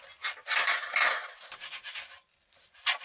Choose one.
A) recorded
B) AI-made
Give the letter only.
A